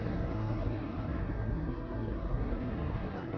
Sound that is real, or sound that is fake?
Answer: fake